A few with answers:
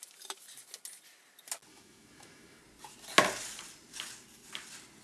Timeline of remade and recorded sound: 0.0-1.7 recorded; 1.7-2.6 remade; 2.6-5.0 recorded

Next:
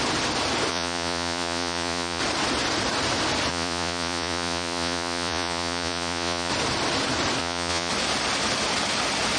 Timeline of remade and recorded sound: 0.0-0.7 recorded; 0.7-2.2 remade; 2.2-3.5 recorded; 3.5-6.5 remade; 6.5-7.4 recorded; 7.4-7.9 remade; 7.9-9.4 recorded

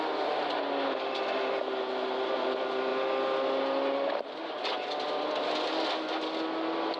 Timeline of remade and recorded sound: 0.0-7.0 recorded

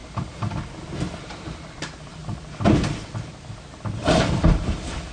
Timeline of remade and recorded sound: 0.0-2.2 remade; 2.2-3.7 recorded; 3.7-5.1 remade

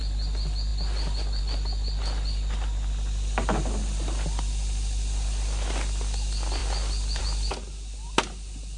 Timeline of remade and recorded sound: 0.0-8.8 recorded

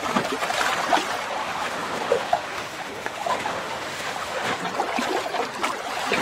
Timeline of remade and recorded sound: 0.0-1.4 recorded; 1.4-4.6 remade; 4.6-6.2 recorded

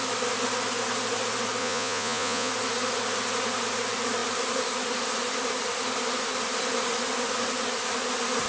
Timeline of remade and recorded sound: 0.0-1.6 recorded; 1.6-2.5 remade; 2.5-8.5 recorded